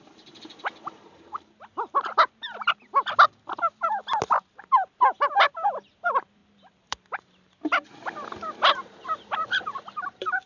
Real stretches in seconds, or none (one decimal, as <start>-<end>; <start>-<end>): 4.0-5.5